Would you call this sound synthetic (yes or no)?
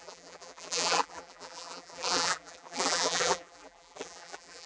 yes